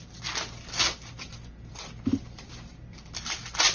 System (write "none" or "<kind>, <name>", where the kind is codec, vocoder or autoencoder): vocoder, BigVGAN v2